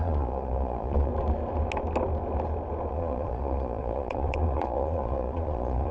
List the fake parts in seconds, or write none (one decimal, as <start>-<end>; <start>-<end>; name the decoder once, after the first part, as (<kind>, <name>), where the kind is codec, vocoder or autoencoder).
0.0-1.1 (vocoder, Vocos); 2.9-5.9